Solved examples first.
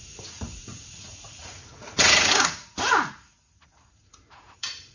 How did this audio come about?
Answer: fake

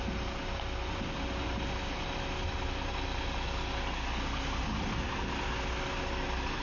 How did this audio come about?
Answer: real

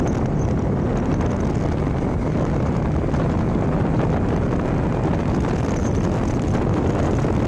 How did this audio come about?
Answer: real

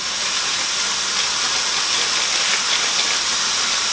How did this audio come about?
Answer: real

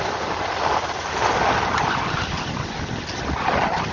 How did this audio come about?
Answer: real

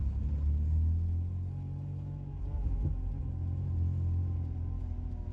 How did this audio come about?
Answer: real